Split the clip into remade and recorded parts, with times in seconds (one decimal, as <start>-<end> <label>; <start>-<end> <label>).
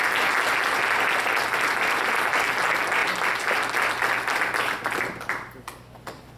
0.0-6.4 recorded